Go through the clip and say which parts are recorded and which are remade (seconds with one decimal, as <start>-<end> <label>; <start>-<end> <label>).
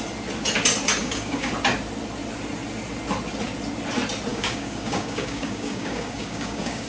0.0-1.0 recorded; 1.0-1.5 remade; 1.5-4.3 recorded; 4.3-6.9 remade